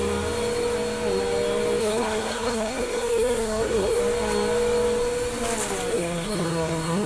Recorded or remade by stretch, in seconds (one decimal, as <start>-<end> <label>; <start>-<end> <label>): 0.0-1.8 recorded; 1.8-4.0 remade; 4.0-5.9 recorded; 5.9-7.1 remade